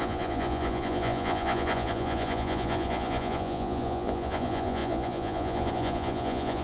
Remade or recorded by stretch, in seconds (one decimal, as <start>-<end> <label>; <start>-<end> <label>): 0.0-6.6 remade